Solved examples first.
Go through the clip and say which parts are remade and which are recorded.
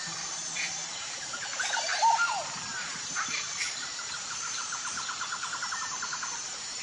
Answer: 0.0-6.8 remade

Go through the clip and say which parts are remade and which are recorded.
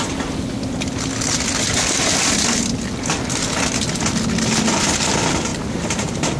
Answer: 0.0-5.5 recorded; 5.5-6.4 remade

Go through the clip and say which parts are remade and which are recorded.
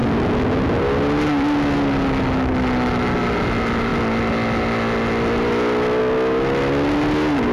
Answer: 0.0-7.5 recorded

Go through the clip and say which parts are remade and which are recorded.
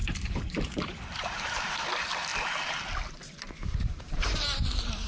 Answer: 0.0-2.3 remade; 2.3-3.8 recorded; 3.8-5.1 remade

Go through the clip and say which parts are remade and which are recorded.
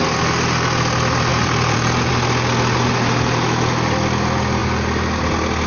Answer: 0.0-1.3 recorded; 1.3-2.1 remade; 2.1-5.7 recorded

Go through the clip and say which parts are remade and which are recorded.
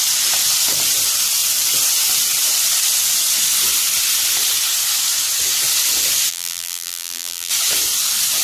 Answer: 0.0-6.3 recorded; 6.3-7.5 remade; 7.5-8.4 recorded